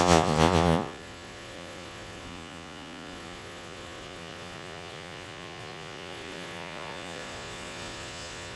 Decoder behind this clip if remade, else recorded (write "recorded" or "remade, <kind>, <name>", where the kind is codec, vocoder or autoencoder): remade, vocoder, Vocos